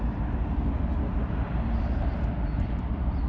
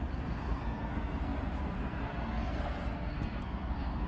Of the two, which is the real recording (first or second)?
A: first